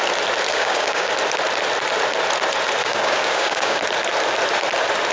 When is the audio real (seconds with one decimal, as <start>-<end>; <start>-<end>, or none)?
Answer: 0.0-0.5; 1.1-2.8; 3.8-5.1